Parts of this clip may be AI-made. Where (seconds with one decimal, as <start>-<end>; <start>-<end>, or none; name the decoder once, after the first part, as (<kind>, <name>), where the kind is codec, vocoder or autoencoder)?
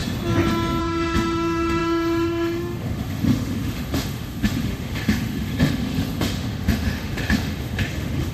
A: 0.8-8.3 (autoencoder, DAC-VAE)